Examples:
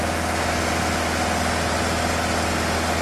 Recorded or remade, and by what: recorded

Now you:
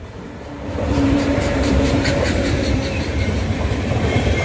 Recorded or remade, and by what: remade, vocoder, BigVGAN v2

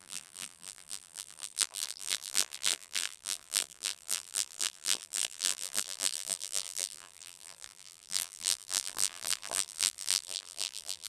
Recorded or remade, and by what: remade, vocoder, BigVGAN v2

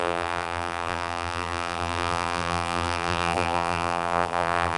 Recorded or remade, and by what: remade, vocoder, BigVGAN v2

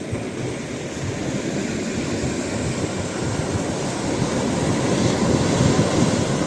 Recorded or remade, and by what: recorded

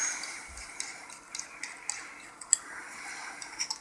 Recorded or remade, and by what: recorded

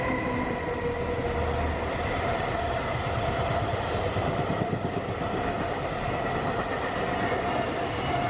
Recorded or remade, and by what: recorded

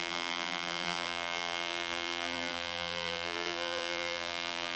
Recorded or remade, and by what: remade, vocoder, BigVGAN v2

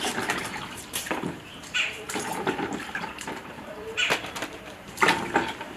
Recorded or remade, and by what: remade, vocoder, BigVGAN v2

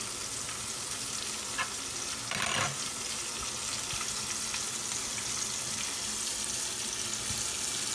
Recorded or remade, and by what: recorded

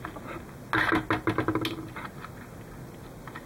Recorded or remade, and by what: recorded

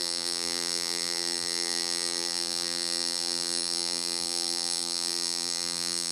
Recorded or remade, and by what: remade, vocoder, BigVGAN v2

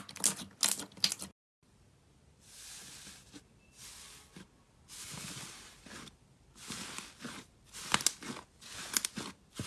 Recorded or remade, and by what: recorded